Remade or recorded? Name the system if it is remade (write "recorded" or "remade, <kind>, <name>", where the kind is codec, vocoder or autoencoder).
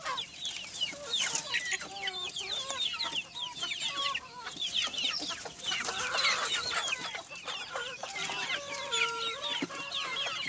recorded